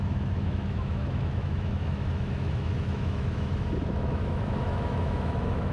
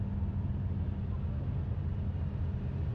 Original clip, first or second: second